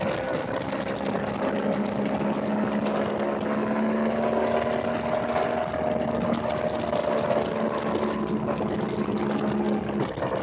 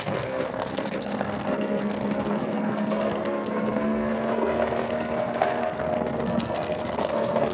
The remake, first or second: second